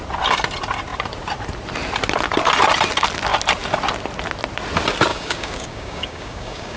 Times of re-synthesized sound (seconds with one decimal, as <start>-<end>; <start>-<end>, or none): 5.1-6.8